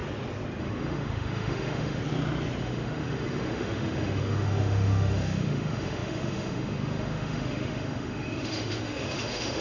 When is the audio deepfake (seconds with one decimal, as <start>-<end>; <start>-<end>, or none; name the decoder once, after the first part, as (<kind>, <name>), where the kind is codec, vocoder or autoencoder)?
0.6-2.0 (autoencoder, DAC-VAE); 2.6-9.6